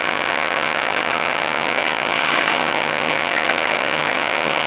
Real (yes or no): no